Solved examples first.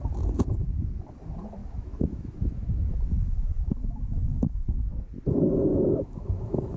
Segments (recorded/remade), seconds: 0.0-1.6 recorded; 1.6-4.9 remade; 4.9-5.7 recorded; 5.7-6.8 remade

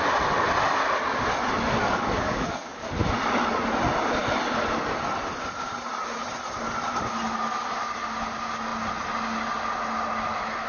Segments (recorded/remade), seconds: 0.0-1.8 recorded; 1.8-2.9 remade; 2.9-10.7 recorded